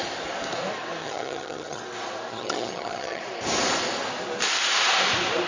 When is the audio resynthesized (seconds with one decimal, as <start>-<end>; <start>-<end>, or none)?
1.0-1.8; 2.3-3.2